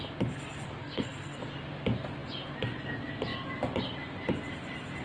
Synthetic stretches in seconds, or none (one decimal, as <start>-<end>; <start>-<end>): 0.8-1.4